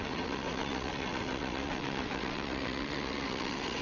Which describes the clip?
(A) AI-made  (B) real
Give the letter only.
A